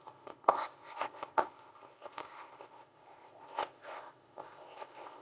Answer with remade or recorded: remade